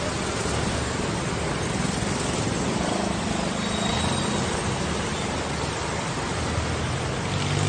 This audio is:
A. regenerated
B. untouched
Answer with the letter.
B